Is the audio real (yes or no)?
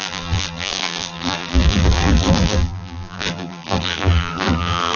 no